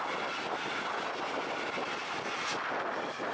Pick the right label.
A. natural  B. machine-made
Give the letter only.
A